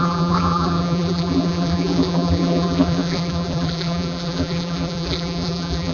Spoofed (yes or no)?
yes